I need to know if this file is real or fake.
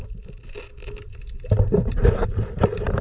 fake